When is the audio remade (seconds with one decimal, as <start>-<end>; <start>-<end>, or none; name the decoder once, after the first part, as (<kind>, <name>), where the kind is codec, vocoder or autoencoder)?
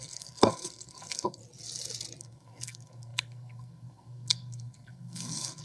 0.0-1.4 (codec, SNAC); 2.2-5.6